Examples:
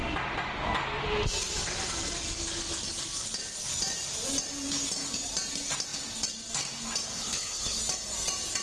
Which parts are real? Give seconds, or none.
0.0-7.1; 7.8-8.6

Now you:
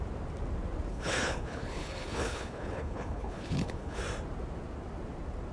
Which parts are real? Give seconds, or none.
0.0-0.9; 4.0-5.5